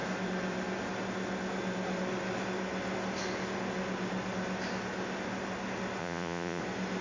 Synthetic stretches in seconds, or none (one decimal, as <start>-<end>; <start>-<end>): 6.0-6.6